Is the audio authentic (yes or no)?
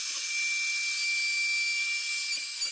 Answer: yes